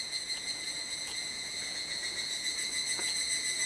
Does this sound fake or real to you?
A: fake